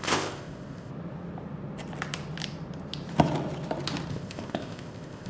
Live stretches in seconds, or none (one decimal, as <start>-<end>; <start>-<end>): 0.9-4.1